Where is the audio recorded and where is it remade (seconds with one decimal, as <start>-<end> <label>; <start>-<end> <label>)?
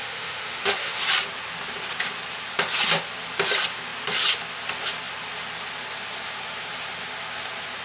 0.0-1.0 remade; 1.0-7.8 recorded